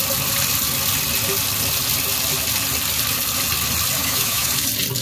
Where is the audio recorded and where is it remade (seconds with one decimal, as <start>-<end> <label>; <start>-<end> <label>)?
0.0-4.0 recorded; 4.0-4.5 remade; 4.5-5.0 recorded